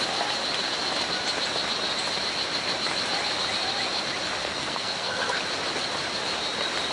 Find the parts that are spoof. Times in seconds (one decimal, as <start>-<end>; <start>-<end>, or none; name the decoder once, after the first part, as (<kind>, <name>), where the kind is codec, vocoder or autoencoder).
4.4-5.4 (codec, SNAC)